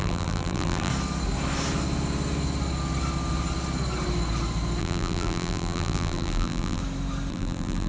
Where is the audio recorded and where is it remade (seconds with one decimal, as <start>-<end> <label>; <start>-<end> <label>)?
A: 0.0-0.9 remade; 0.9-4.8 recorded; 4.8-6.8 remade; 6.8-7.3 recorded; 7.3-7.9 remade

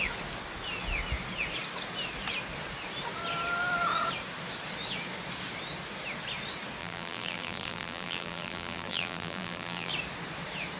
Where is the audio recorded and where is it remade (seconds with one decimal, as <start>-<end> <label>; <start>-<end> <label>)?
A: 0.0-6.8 recorded; 6.8-9.9 remade; 9.9-10.8 recorded

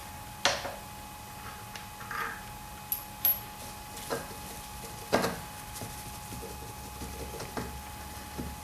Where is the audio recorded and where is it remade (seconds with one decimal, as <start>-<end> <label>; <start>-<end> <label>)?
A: 0.0-8.6 recorded

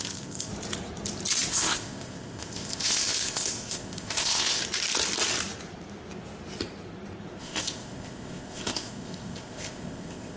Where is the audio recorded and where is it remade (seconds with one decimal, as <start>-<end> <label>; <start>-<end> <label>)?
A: 0.0-0.5 remade; 0.5-1.5 recorded; 1.5-4.6 remade; 4.6-7.4 recorded; 7.4-10.4 remade

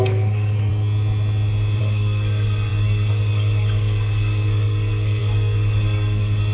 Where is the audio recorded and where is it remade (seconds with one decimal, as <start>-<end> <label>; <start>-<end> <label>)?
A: 0.0-0.7 remade; 0.7-1.8 recorded; 1.8-6.5 remade